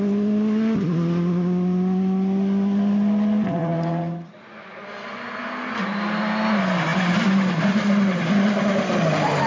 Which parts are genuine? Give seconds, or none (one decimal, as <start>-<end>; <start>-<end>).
0.0-9.5